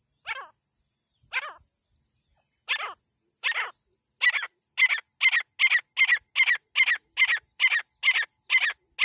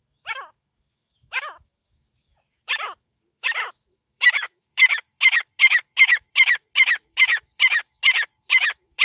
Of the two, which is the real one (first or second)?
first